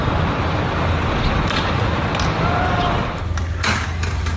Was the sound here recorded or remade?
recorded